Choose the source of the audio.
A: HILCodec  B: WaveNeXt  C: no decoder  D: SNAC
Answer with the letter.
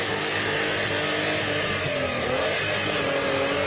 C